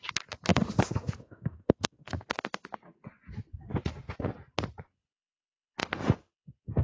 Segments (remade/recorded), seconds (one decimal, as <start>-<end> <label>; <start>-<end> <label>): 0.0-0.5 recorded; 0.5-2.3 remade; 2.3-6.8 recorded